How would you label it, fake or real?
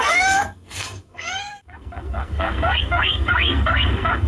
fake